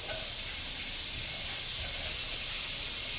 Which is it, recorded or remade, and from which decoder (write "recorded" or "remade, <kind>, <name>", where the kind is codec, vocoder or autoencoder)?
recorded